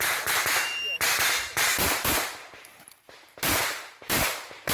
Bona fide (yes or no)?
no